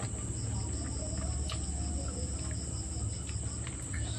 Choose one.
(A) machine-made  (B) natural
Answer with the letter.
B